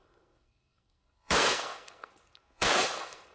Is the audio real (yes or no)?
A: no